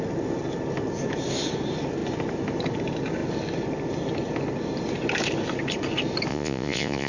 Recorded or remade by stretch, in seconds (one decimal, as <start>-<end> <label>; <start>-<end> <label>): 0.0-6.3 recorded; 6.3-7.1 remade